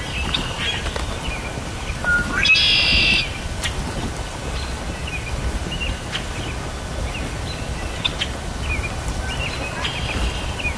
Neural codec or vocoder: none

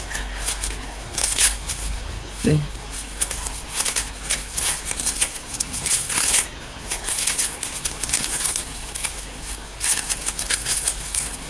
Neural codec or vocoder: codec, SNAC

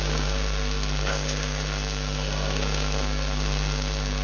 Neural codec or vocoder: codec, SNAC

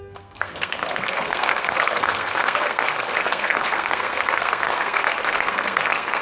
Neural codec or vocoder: codec, SNAC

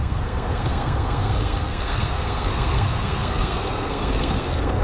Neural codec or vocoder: codec, SNAC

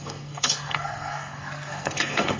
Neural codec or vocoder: codec, SNAC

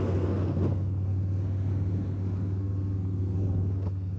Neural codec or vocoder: codec, SNAC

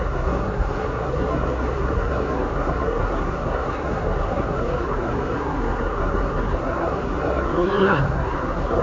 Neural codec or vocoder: codec, SNAC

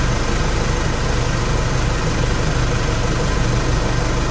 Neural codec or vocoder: none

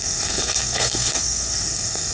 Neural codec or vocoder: codec, SNAC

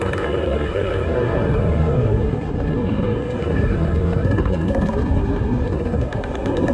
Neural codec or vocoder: codec, SNAC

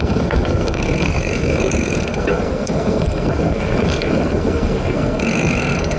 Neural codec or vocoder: codec, SNAC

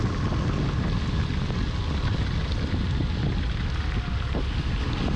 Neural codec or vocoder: none